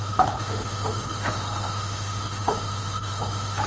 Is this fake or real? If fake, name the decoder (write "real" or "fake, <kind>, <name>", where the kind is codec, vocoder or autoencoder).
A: fake, autoencoder, DAC-VAE